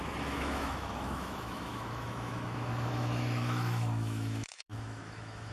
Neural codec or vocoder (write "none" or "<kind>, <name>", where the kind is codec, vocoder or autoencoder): autoencoder, DAC-VAE